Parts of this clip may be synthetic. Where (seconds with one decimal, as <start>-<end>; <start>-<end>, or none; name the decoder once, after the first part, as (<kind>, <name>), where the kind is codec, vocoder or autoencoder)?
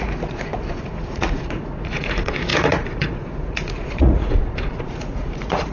0.0-5.7 (vocoder, Vocos)